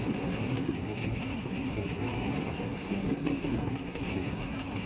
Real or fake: fake